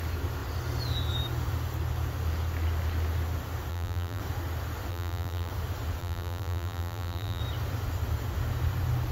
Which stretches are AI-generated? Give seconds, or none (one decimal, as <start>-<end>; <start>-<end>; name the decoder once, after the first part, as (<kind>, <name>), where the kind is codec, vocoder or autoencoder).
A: 3.7-4.2 (vocoder, BigVGAN v2); 4.9-5.5; 6.0-7.4

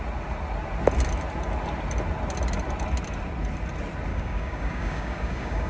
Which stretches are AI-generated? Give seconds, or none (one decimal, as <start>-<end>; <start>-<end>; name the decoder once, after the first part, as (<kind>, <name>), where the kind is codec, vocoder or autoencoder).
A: 4.1-5.7 (codec, DAC)

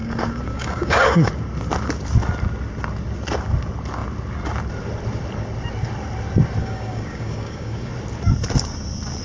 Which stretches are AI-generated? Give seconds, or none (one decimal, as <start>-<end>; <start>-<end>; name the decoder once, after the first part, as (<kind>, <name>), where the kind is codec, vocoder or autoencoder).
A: 0.0-1.3 (codec, DAC); 6.6-7.9

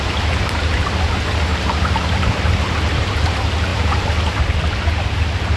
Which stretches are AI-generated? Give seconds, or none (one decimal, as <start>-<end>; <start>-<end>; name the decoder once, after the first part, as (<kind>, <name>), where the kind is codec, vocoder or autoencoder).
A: 1.5-3.2 (vocoder, BigVGAN v2); 3.7-4.4

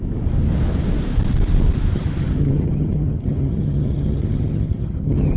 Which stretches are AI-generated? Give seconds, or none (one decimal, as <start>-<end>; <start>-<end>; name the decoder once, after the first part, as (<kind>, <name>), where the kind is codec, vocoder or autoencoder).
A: 1.9-5.4 (vocoder, HiFi-GAN)

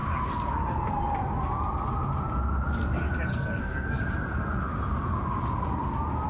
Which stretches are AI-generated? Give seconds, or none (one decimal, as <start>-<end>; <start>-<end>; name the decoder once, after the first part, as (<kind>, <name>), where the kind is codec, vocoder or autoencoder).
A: 3.3-4.0 (codec, SNAC)

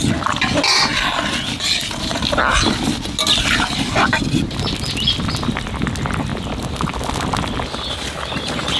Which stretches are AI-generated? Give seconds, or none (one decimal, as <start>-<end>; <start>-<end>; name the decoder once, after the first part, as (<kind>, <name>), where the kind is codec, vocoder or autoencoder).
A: none

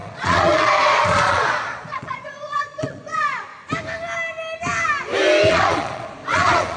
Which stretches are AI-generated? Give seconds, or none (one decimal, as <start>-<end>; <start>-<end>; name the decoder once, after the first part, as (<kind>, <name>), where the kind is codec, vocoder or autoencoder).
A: 0.0-3.5 (vocoder, Vocos); 5.5-6.8